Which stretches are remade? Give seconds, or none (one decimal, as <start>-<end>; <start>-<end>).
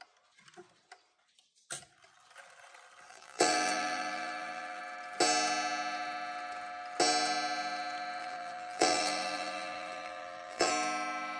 3.1-4.8; 8.2-10.7